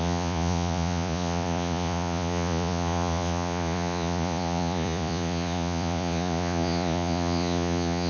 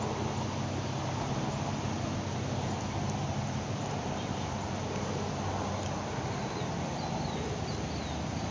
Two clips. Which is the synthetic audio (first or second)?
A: first